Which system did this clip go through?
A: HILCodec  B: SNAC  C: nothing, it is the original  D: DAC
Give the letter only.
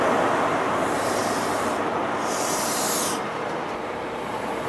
C